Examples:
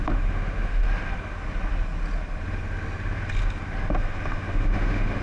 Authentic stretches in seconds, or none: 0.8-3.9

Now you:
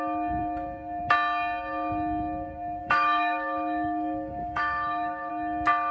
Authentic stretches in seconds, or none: 0.0-2.8; 5.3-5.9

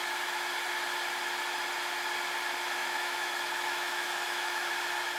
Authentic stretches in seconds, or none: 0.0-2.8; 4.7-5.2

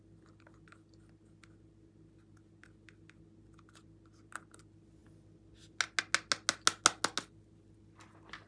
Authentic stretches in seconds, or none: 0.0-8.5